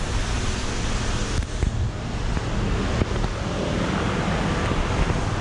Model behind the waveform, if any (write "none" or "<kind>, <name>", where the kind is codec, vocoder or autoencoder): none